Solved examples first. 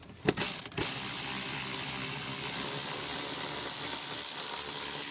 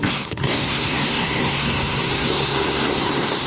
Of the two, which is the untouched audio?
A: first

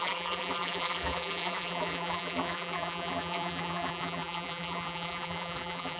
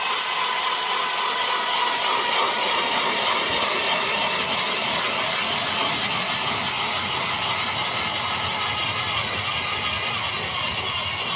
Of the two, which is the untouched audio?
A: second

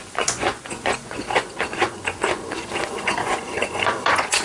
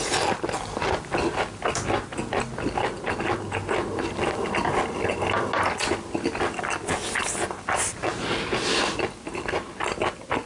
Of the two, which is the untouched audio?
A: second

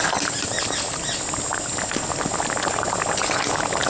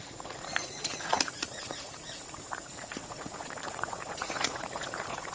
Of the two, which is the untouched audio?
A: first